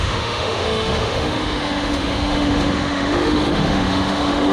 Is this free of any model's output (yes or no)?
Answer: no